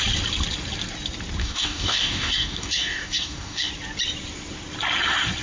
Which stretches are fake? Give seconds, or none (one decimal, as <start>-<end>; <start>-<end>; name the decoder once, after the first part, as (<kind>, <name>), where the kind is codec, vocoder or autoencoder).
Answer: 1.4-3.7 (codec, DAC)